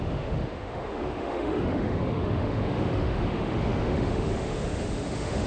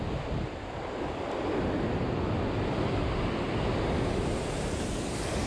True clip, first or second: second